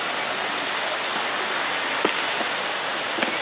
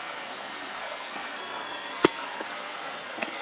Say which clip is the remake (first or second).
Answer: second